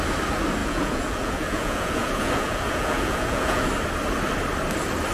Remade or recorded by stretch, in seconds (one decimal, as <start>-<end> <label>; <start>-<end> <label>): 0.0-0.6 recorded; 0.6-3.7 remade; 3.7-5.1 recorded